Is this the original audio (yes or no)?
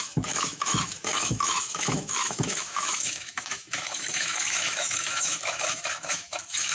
no